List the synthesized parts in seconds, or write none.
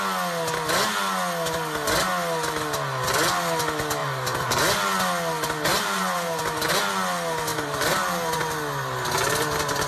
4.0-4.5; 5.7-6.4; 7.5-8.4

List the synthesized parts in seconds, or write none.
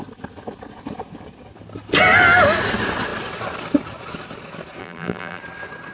4.8-5.4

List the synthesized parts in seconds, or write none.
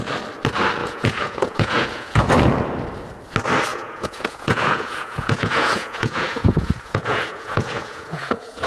0.8-2.3; 3.7-8.7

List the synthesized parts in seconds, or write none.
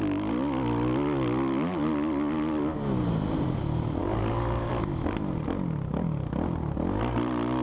4.0-4.7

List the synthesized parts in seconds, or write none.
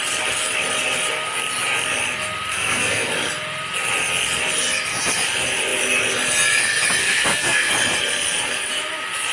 2.5-3.1; 7.0-7.7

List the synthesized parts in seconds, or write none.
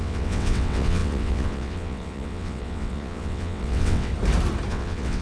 0.0-4.1; 4.7-5.2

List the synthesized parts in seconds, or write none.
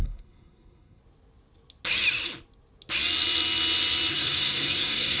0.0-1.0; 4.1-5.2